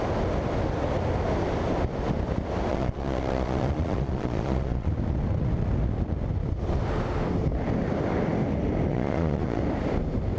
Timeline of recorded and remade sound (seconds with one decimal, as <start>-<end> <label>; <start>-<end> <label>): 0.0-2.7 recorded; 2.7-4.9 remade; 4.9-8.9 recorded; 8.9-9.6 remade; 9.6-10.4 recorded

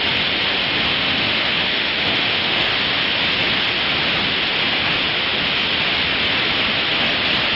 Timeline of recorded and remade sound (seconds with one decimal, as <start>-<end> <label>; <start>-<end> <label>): 0.0-0.9 recorded; 0.9-2.7 remade; 2.7-7.6 recorded

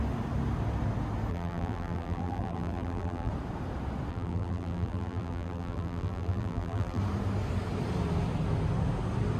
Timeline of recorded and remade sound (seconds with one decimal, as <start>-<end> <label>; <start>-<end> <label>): 0.0-1.3 recorded; 1.3-3.3 remade; 3.3-4.1 recorded; 4.1-7.0 remade; 7.0-9.4 recorded

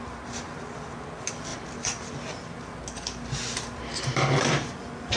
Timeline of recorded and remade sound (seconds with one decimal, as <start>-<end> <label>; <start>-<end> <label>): 0.0-5.2 recorded

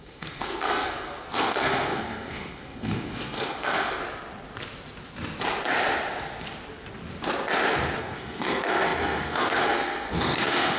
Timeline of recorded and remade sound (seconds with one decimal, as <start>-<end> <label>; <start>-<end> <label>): 0.0-4.0 remade; 4.0-8.0 recorded; 8.0-10.8 remade